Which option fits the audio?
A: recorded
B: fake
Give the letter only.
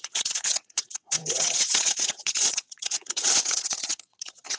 B